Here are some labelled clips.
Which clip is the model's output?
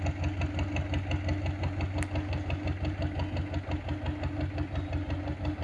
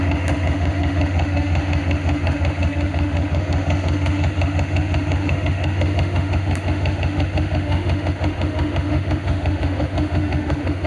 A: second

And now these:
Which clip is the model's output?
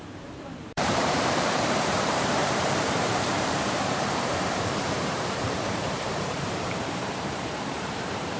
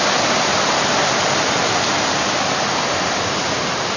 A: first